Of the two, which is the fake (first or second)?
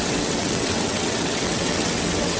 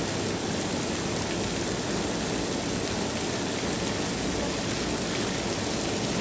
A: first